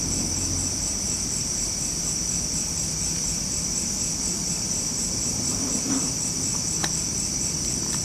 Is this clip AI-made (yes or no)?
yes